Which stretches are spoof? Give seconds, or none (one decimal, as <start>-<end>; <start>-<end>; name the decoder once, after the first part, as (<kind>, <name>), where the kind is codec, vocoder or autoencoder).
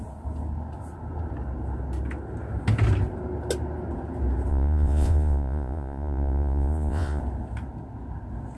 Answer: 4.5-7.2 (vocoder, Vocos)